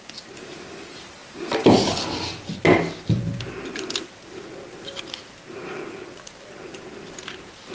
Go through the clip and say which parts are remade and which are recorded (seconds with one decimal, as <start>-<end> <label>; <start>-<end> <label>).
0.0-7.7 recorded